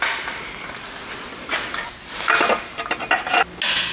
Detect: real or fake real